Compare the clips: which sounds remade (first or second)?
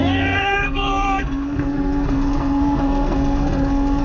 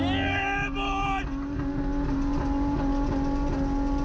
first